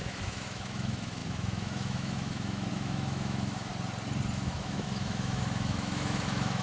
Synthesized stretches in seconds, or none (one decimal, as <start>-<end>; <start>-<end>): 0.0-3.7; 4.3-6.6